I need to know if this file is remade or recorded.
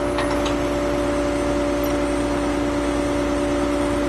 recorded